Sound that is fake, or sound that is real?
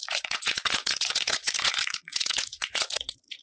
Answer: fake